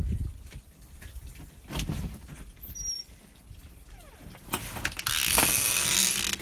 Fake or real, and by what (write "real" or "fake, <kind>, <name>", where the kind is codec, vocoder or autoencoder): real